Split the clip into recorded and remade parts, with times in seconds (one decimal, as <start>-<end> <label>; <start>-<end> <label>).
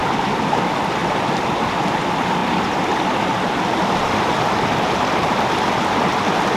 0.0-6.6 recorded